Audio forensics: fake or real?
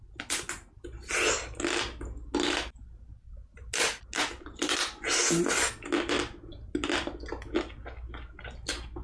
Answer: real